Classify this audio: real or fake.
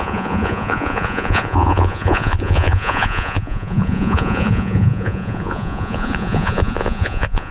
fake